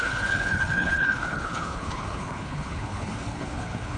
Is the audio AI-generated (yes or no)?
yes